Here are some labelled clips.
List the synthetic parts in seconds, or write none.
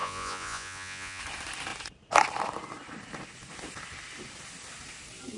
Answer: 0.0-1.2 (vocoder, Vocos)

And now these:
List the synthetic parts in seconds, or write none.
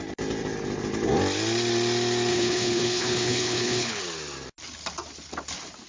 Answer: 2.3-4.0 (codec, HILCodec)